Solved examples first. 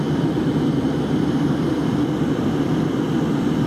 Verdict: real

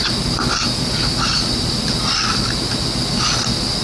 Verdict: real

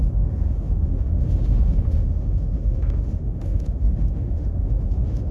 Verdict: fake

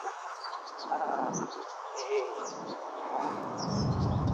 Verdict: fake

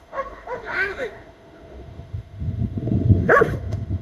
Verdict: fake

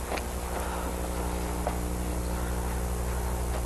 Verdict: real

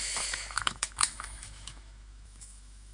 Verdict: fake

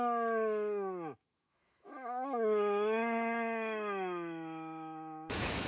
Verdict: fake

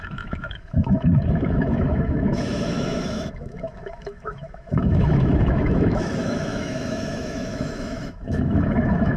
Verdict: fake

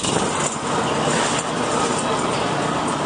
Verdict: real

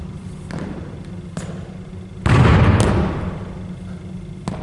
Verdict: real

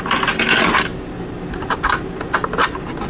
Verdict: real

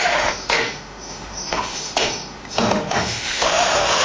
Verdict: fake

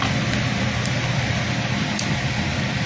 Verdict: real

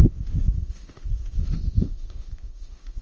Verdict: fake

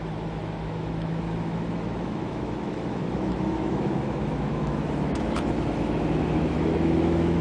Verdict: fake